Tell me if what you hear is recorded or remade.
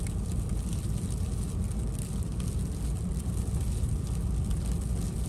recorded